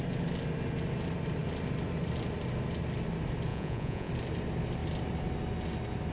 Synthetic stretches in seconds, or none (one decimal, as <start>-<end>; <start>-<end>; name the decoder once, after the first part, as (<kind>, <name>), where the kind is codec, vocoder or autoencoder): 3.5-4.1 (vocoder, Vocos)